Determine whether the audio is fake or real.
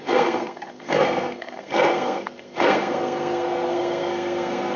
fake